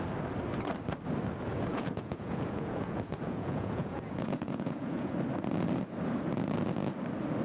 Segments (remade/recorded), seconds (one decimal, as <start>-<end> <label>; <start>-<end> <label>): 0.0-1.7 recorded; 1.7-5.1 remade; 5.1-7.4 recorded